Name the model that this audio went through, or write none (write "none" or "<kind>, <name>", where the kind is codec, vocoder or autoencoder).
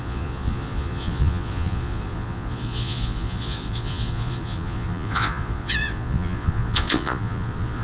vocoder, Vocos